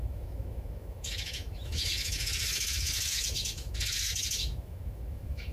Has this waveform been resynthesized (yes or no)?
yes